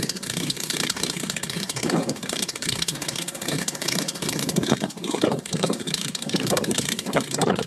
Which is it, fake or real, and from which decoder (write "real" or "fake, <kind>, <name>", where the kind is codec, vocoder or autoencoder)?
fake, codec, SNAC